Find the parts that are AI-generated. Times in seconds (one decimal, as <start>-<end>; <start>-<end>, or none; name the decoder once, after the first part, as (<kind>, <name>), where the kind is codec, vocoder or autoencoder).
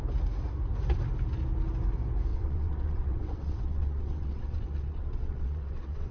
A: 2.3-6.1 (vocoder, WaveNeXt)